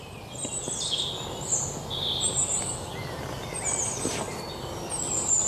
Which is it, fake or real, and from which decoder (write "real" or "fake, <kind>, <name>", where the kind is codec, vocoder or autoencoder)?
real